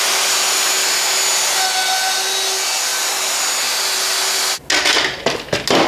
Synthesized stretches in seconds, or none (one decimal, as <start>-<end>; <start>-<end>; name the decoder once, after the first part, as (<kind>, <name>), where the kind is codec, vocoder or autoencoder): none